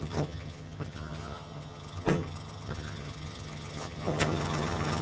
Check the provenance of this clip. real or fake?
fake